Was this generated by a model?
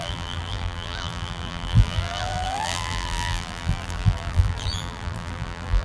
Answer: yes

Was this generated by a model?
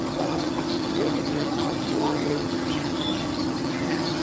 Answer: yes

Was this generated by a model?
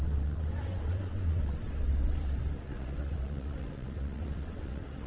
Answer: yes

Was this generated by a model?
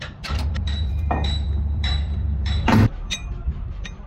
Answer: yes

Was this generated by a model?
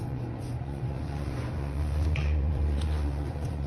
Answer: yes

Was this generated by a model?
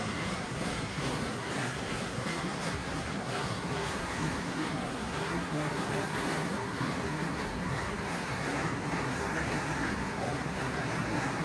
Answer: yes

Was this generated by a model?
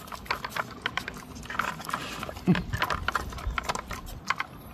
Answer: no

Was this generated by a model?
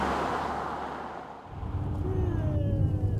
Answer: no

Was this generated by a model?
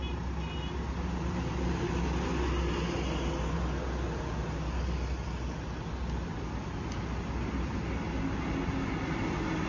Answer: no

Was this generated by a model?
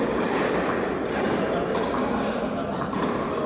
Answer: no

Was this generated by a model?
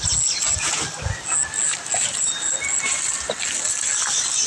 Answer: no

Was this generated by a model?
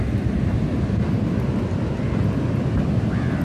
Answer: no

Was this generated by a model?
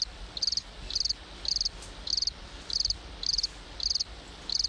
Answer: no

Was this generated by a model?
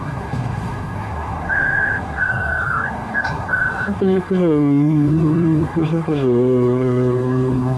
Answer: yes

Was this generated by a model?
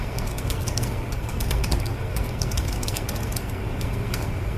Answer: yes